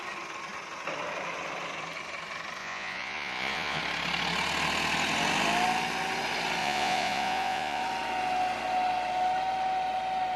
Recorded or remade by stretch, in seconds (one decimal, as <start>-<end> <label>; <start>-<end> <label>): 0.0-2.6 recorded; 2.6-3.8 remade; 3.8-6.6 recorded; 6.6-7.8 remade; 7.8-10.4 recorded